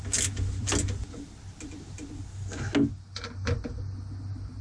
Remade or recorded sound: recorded